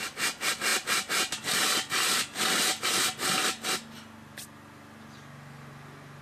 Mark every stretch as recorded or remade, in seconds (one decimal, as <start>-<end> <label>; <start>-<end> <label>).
0.0-6.2 recorded